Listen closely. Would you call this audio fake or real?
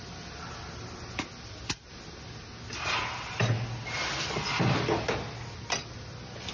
real